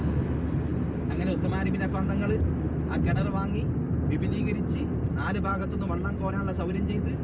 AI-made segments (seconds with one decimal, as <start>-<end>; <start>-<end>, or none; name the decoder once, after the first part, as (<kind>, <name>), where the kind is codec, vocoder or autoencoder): none